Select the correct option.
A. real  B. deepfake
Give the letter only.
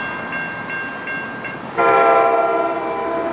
A